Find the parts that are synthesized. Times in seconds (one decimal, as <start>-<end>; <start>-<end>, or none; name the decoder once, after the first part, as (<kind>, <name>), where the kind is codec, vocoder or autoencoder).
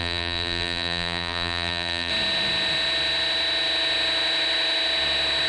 0.0-2.1 (vocoder, BigVGAN v2)